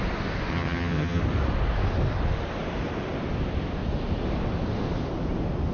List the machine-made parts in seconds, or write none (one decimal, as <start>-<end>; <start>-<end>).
0.5-1.2